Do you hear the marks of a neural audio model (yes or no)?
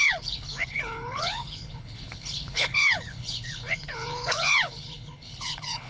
yes